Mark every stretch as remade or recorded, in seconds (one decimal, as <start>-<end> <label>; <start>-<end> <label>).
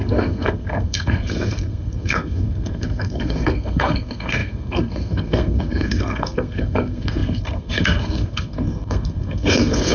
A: 0.0-9.9 remade